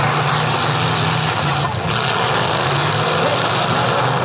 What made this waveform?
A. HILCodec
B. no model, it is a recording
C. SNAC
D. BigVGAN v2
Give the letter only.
B